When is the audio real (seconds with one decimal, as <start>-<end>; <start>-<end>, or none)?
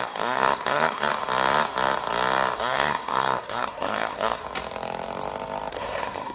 1.1-2.6; 4.4-5.7